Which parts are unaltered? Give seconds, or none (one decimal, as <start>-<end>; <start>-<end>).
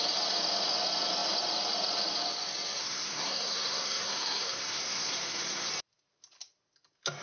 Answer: 0.0-2.8; 5.7-7.2